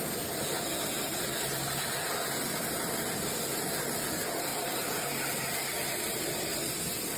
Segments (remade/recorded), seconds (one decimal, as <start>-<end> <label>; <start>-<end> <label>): 0.0-4.5 recorded; 4.5-5.1 remade; 5.1-7.2 recorded